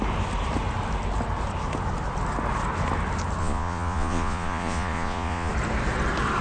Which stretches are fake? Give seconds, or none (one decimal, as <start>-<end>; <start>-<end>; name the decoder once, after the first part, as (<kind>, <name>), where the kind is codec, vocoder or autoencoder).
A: 3.4-5.5 (vocoder, Vocos)